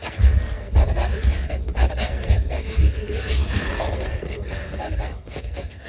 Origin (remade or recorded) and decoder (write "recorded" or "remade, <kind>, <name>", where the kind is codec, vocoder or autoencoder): remade, codec, SNAC